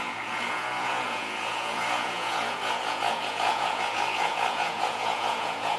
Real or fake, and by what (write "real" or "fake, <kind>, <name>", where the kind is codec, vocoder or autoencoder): fake, vocoder, Vocos